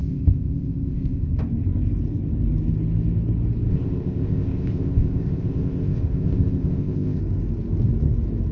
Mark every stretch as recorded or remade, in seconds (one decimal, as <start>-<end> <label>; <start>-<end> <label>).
0.0-1.3 remade; 1.3-3.7 recorded; 3.7-7.2 remade; 7.2-8.5 recorded